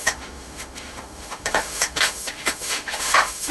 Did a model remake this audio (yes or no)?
yes